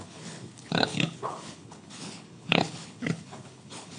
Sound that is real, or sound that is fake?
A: fake